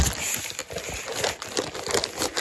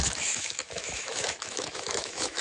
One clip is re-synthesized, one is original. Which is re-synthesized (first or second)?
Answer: second